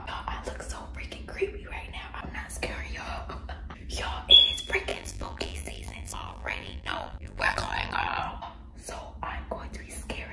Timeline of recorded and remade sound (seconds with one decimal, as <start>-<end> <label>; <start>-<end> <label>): 0.0-4.9 recorded; 4.9-8.2 remade; 8.2-10.3 recorded